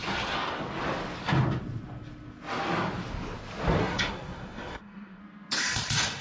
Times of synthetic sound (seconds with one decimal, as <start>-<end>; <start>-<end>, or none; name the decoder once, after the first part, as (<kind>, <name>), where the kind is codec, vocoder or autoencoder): 3.8-5.2 (codec, SNAC)